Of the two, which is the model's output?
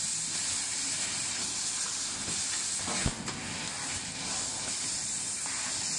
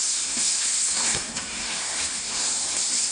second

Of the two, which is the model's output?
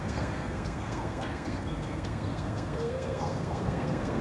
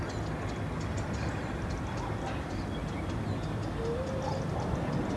first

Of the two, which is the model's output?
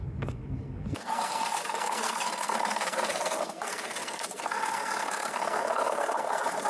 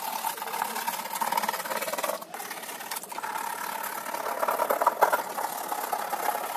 first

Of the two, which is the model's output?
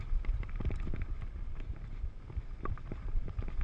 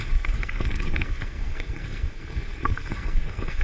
second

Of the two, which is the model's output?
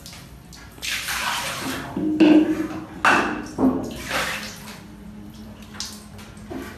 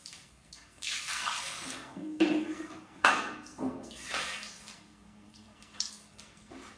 second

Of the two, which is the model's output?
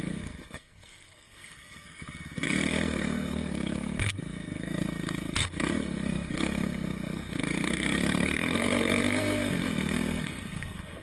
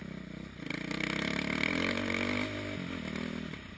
first